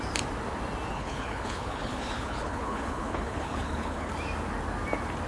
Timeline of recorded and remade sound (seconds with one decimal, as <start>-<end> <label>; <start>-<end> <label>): 0.0-0.9 recorded; 0.9-4.1 remade; 4.1-5.3 recorded